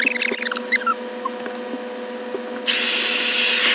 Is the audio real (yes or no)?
yes